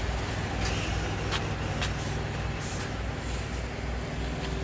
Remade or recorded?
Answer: recorded